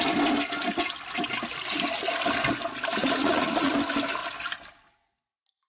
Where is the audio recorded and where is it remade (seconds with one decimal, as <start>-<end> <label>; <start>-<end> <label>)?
0.0-3.0 recorded; 3.0-3.7 remade; 3.7-5.7 recorded